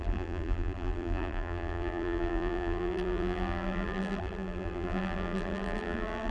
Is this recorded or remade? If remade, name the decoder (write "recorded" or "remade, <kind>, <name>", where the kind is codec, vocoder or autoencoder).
remade, vocoder, BigVGAN v2